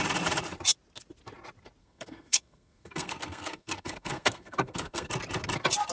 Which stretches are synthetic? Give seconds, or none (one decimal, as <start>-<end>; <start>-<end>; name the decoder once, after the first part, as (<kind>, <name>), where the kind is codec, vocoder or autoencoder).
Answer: 1.8-5.1 (codec, SNAC)